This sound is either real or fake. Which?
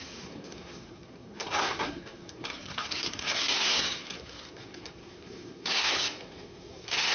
fake